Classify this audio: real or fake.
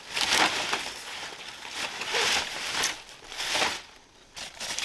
real